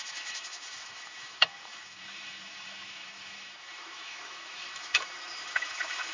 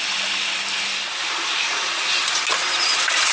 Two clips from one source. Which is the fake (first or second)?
first